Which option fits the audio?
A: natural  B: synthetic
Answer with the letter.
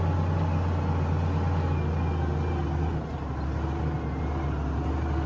A